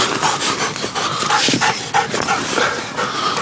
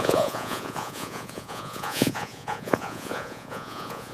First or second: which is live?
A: first